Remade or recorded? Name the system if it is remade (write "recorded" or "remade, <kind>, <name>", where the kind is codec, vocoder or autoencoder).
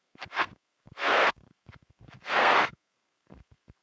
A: remade, codec, SNAC